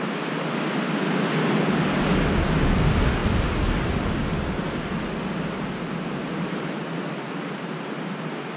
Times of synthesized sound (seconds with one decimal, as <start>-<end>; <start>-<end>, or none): none